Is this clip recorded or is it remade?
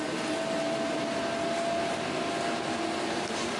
recorded